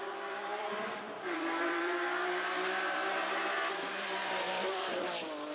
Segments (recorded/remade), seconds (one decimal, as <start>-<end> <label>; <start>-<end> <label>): 0.0-5.5 remade